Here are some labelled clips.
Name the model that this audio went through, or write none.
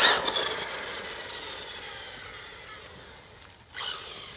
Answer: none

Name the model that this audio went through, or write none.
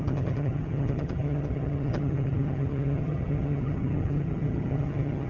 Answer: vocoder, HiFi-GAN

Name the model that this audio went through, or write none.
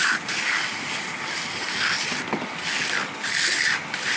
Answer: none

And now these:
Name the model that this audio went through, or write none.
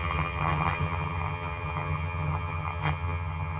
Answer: vocoder, HiFi-GAN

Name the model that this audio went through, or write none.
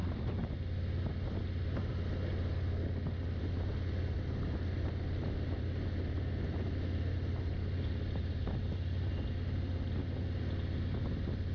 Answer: none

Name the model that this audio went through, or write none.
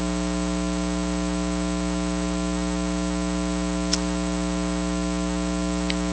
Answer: none